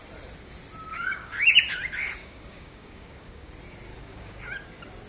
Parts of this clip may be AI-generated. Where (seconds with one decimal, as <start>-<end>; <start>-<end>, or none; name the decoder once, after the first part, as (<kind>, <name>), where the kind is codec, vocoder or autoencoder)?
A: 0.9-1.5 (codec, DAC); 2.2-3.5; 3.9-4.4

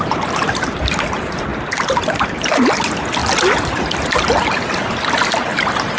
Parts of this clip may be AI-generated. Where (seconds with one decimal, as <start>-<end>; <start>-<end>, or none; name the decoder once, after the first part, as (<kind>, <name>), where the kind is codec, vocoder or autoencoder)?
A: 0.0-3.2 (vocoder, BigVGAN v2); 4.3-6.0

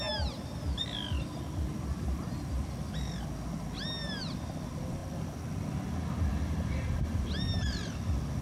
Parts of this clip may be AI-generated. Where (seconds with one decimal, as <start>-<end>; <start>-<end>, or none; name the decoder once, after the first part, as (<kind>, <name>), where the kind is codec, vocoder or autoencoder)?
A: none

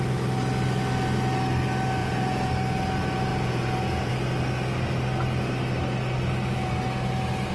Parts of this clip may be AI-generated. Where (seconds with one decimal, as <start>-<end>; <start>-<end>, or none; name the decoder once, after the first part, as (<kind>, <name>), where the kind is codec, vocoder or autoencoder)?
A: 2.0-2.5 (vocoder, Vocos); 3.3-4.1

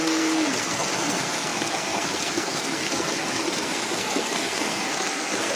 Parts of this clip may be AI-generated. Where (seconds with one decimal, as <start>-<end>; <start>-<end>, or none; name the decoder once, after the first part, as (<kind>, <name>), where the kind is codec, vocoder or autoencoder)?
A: 0.0-5.6 (codec, SNAC)